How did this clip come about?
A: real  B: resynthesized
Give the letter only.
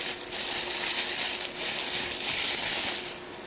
A